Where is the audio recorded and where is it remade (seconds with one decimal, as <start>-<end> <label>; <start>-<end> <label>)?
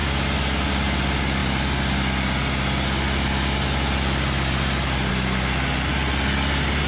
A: 0.0-6.9 recorded